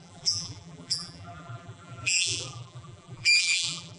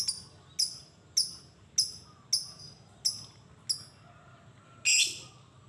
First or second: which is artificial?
first